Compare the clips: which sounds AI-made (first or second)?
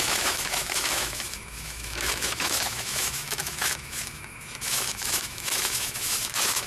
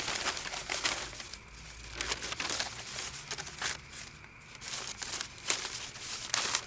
first